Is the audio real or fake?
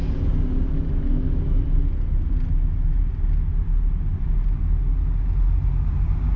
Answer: real